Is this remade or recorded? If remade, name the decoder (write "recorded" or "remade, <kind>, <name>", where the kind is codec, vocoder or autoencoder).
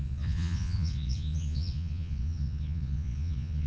remade, vocoder, Vocos